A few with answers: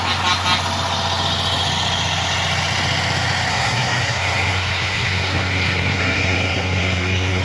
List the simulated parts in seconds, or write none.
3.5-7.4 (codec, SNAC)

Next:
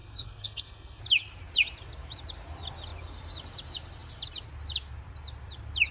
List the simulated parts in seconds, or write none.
0.0-1.0 (codec, SNAC)

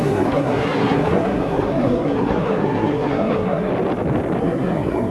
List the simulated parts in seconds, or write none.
0.0-3.7 (codec, SNAC); 4.4-5.1

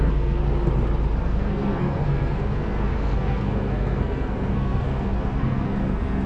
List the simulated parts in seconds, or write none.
0.0-0.4 (codec, SNAC); 1.2-6.3

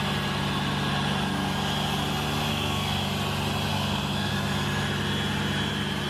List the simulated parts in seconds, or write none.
2.5-3.0 (codec, SNAC); 3.7-4.3